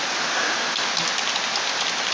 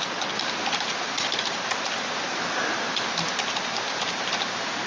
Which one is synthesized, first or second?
second